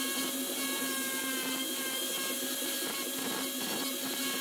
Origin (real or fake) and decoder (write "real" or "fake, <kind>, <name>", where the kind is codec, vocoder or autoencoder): real